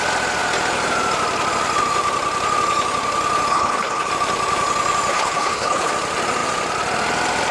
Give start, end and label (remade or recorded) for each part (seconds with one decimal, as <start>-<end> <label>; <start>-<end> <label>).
0.0-3.5 recorded; 3.5-4.1 remade; 4.1-5.1 recorded; 5.1-5.9 remade; 5.9-7.5 recorded